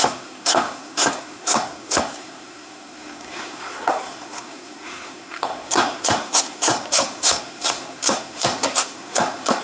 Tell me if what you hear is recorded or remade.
remade